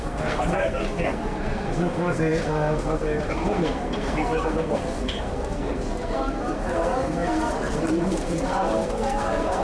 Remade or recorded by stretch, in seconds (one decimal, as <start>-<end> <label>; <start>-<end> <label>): 0.0-9.6 remade